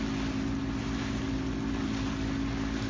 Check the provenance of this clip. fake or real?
real